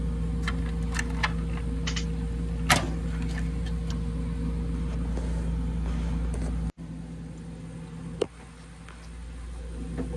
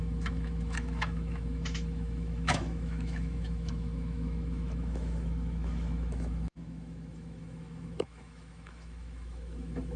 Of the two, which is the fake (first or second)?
second